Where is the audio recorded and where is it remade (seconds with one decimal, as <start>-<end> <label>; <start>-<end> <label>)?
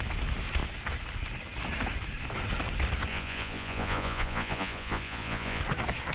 0.0-3.1 recorded; 3.1-5.6 remade; 5.6-6.1 recorded